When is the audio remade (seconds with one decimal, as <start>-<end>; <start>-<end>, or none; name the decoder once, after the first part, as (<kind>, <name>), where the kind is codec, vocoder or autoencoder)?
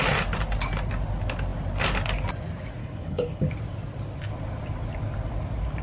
2.8-3.5 (codec, HILCodec)